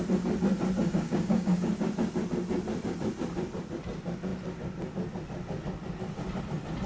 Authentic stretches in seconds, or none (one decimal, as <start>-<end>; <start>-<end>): 0.0-0.8; 1.7-6.9